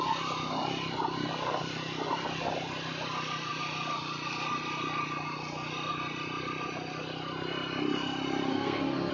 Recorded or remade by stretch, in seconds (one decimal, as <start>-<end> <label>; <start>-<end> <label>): 0.0-8.5 recorded; 8.5-9.1 remade